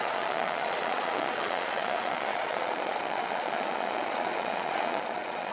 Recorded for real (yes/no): no